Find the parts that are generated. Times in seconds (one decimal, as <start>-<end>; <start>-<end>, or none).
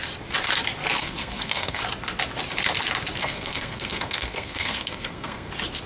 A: 1.0-1.8; 3.2-5.5